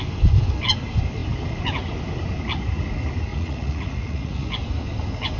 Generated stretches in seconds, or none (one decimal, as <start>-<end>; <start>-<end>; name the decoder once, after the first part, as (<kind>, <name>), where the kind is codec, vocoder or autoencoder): 3.3-4.5 (vocoder, Vocos)